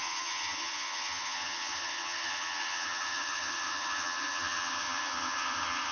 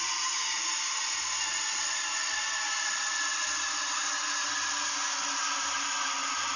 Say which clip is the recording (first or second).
second